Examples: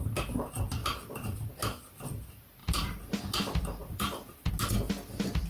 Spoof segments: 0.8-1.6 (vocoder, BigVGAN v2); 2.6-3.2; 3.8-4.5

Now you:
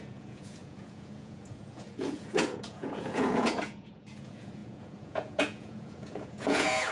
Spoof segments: 0.0-6.9 (vocoder, Vocos)

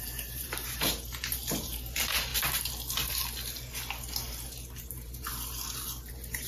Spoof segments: 0.0-2.3 (vocoder, BigVGAN v2); 4.7-5.3; 6.1-6.5

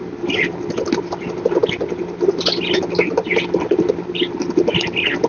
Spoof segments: none

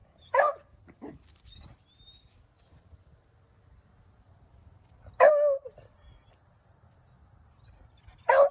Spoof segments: 0.0-0.8 (vocoder, Vocos)

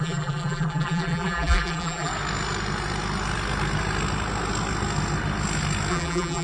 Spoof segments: 0.0-2.1 (vocoder, BigVGAN v2); 5.9-6.4

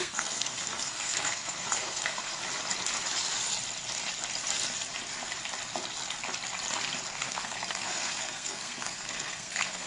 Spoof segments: 0.0-2.4 (codec, SNAC); 7.1-9.9